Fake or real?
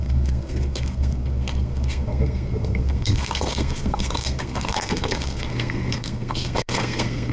fake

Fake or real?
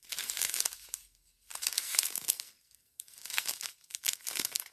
fake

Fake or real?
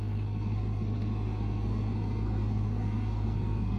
fake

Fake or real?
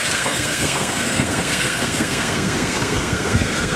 fake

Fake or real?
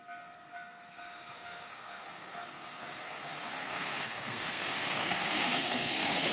fake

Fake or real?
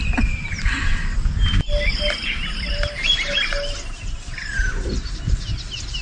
real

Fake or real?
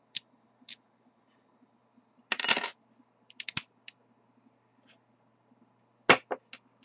real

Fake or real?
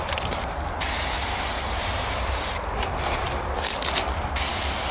real